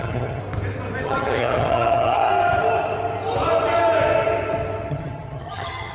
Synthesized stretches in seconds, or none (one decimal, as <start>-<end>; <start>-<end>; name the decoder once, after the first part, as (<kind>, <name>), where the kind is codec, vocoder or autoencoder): 0.0-0.4 (vocoder, HiFi-GAN); 1.0-2.3; 4.9-5.9